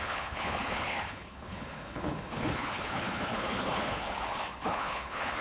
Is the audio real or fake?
fake